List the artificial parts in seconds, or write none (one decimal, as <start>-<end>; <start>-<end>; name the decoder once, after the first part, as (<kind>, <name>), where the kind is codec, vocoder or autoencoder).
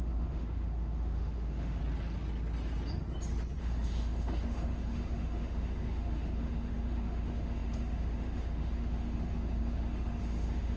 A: 0.0-1.8 (autoencoder, DAC-VAE); 3.6-10.8